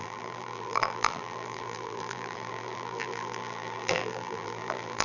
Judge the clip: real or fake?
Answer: fake